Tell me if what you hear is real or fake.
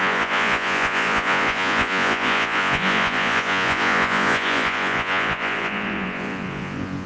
fake